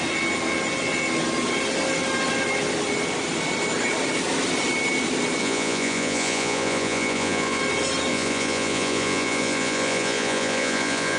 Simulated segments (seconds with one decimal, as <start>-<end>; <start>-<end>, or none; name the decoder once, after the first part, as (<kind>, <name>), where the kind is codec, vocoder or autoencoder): 5.4-7.6 (vocoder, Vocos); 8.1-11.2